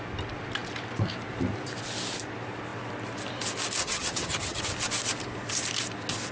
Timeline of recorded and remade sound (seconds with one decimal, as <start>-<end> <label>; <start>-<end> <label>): 0.0-3.8 recorded; 3.8-4.6 remade; 4.6-6.3 recorded